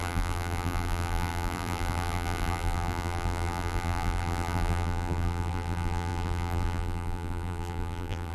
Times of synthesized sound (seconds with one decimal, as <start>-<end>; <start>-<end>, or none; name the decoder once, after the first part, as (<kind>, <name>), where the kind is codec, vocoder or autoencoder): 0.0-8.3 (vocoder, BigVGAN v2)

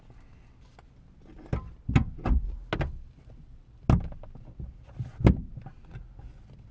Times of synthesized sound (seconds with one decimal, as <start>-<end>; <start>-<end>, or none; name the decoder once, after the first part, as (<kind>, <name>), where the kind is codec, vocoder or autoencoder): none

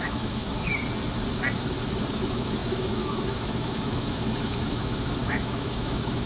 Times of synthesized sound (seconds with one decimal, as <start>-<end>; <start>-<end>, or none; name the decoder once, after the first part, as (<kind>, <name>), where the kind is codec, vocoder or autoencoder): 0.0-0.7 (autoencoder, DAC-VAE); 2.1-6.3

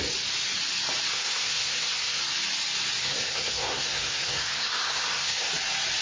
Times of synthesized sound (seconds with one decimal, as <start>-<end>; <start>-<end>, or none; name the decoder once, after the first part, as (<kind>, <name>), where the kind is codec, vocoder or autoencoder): 1.1-2.2 (codec, SNAC); 3.0-5.5

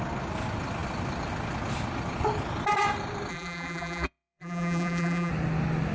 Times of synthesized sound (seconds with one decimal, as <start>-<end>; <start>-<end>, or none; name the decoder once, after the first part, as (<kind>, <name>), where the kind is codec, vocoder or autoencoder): 3.3-5.3 (vocoder, BigVGAN v2)